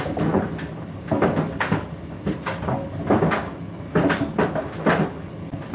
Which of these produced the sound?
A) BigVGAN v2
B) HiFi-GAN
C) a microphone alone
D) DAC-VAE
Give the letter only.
C